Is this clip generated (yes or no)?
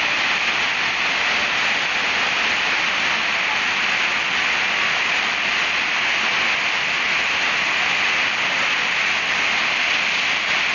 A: no